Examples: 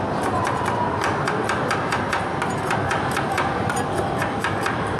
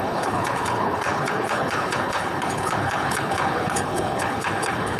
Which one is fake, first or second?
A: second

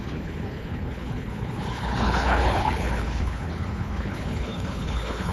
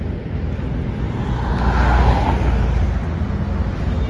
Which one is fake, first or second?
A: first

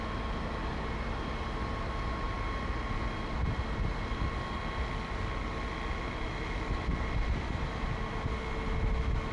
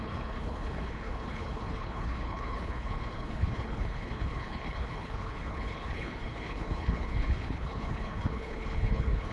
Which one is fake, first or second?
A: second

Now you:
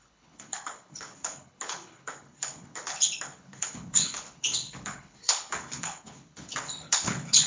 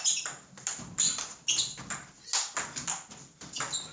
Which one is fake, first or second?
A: first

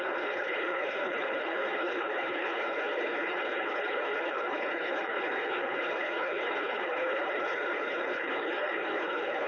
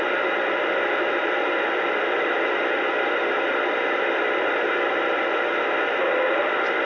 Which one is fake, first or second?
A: first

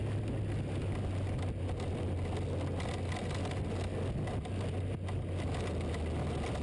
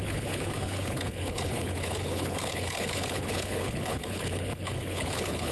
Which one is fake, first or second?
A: second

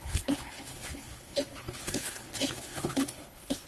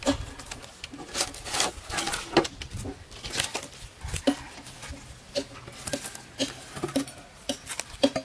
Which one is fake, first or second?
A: first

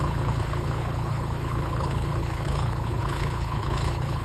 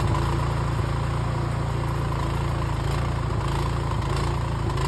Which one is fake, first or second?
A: first